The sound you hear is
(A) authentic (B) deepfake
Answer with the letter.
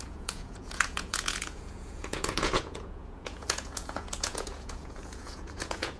B